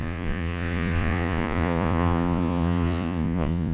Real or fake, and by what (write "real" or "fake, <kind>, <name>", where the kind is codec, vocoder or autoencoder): fake, vocoder, Vocos